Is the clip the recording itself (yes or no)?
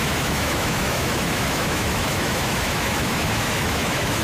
no